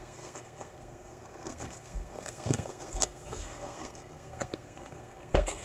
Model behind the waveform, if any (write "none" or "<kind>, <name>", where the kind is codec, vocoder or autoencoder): codec, SNAC